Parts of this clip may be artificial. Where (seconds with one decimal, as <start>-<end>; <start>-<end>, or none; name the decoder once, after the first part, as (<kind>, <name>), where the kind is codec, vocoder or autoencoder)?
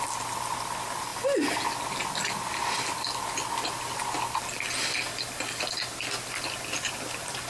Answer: none